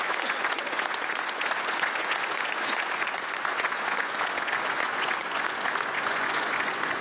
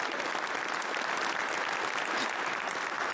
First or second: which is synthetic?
first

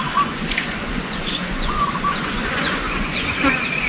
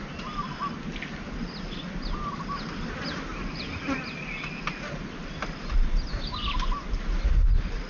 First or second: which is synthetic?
first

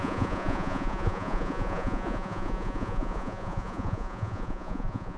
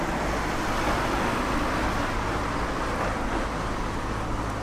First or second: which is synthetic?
first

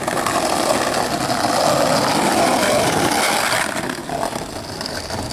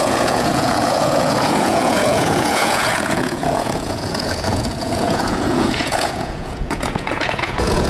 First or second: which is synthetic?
second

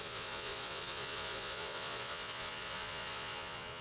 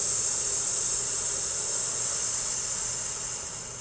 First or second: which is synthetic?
first